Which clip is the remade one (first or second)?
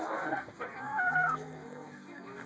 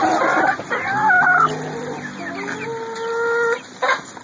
first